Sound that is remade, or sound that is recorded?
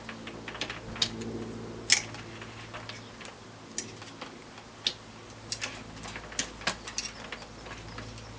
recorded